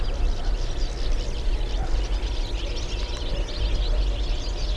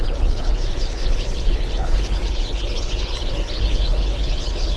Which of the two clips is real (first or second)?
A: first